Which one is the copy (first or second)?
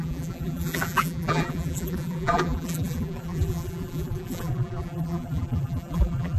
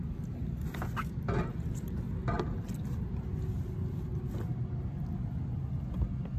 first